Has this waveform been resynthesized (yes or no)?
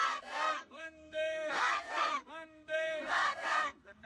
yes